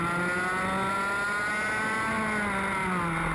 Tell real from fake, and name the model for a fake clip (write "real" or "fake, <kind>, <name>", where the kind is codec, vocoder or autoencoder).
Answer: real